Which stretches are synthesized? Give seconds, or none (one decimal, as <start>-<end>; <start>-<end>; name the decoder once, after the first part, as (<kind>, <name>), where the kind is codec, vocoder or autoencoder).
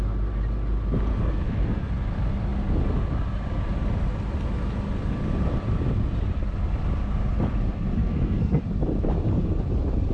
1.1-1.9 (codec, SNAC); 8.0-8.6